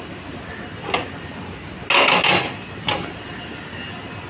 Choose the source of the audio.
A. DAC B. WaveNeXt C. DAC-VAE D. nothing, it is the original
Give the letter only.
D